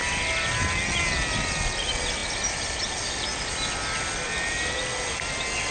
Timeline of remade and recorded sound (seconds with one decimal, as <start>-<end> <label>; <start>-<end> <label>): 0.0-5.7 recorded